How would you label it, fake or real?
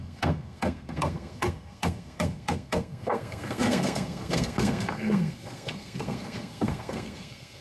fake